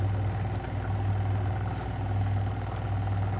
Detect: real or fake real